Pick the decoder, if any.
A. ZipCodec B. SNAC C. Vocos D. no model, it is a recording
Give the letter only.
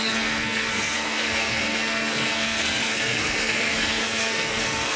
B